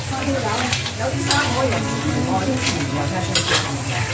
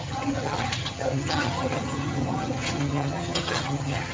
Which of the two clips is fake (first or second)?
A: second